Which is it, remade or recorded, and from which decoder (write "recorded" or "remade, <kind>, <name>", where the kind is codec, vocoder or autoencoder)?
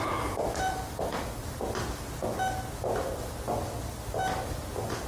recorded